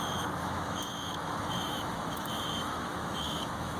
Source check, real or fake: fake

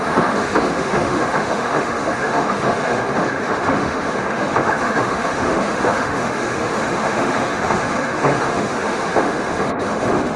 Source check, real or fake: fake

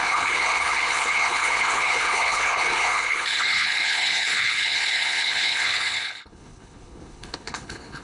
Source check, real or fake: fake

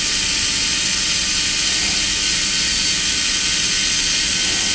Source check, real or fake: real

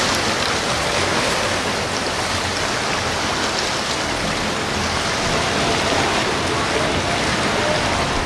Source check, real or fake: real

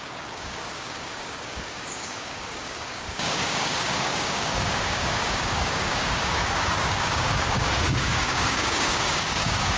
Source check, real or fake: fake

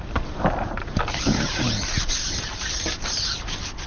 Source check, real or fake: fake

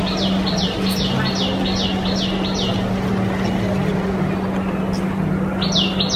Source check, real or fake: real